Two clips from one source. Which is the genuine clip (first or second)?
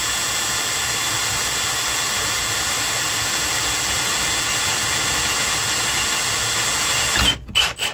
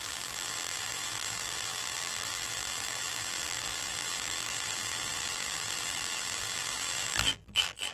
first